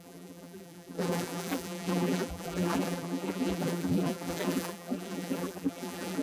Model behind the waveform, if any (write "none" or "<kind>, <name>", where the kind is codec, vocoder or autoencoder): vocoder, BigVGAN v2